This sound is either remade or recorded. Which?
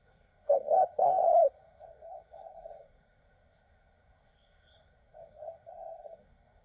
remade